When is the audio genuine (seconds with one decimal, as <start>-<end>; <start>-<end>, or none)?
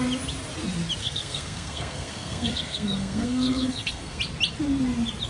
0.0-1.0; 4.2-5.3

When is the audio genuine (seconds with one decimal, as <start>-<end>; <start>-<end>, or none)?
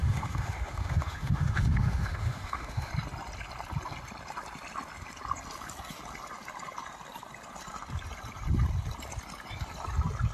2.9-10.3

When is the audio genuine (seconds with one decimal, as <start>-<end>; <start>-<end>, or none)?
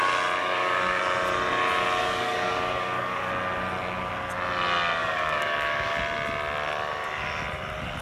0.0-0.4; 1.0-2.0; 3.3-5.0; 6.0-8.0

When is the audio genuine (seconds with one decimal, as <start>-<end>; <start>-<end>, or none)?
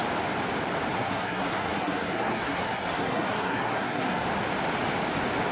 0.0-0.9; 4.2-5.5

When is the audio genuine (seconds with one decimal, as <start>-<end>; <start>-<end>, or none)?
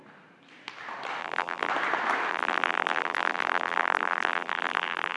0.0-1.2; 1.7-2.3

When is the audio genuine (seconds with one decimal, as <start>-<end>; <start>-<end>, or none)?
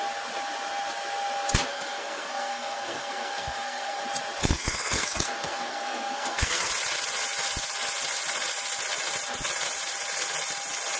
0.0-1.7; 4.0-4.4; 6.7-11.0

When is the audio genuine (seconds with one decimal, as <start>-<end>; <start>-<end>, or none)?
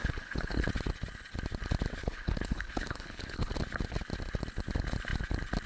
0.7-2.0; 3.5-5.7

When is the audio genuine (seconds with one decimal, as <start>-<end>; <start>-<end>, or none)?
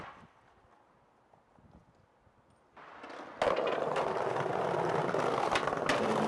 0.0-6.3